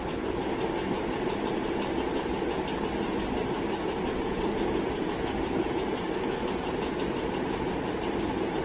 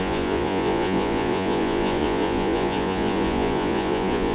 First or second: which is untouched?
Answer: first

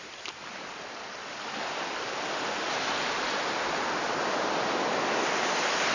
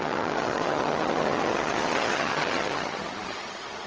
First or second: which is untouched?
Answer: first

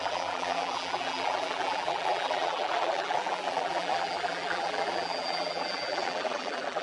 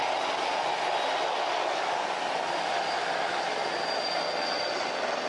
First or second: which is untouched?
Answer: second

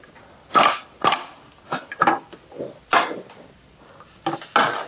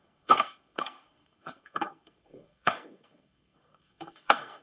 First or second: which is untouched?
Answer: first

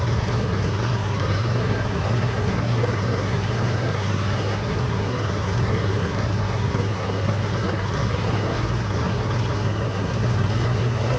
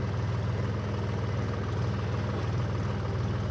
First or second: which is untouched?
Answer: second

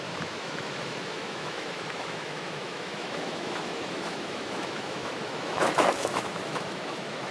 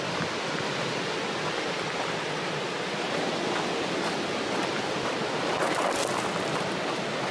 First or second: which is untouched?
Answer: second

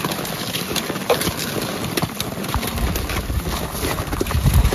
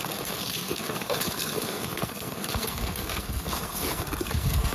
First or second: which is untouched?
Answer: first